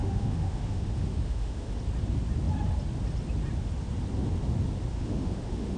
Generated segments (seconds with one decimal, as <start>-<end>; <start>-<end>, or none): 0.0-1.7; 4.9-5.8